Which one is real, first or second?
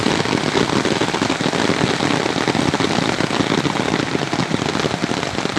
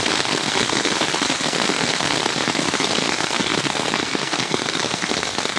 first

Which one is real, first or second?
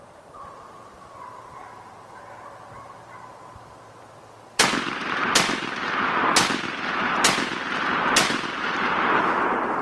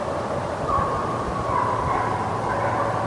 second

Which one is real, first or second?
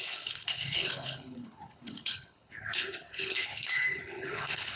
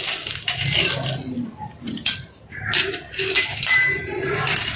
second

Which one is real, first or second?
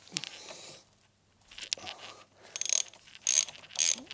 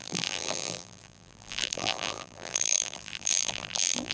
first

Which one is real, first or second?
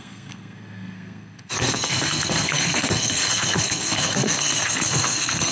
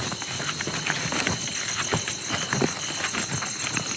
second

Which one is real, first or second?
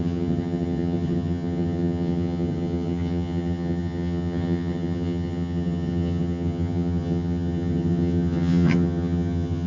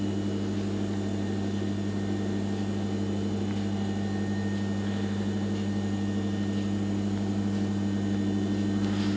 second